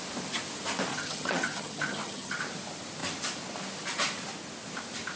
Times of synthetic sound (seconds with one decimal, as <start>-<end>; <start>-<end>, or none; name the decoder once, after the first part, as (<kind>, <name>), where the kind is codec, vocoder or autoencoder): 0.9-2.4 (vocoder, HiFi-GAN)